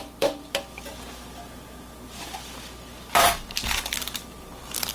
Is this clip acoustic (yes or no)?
no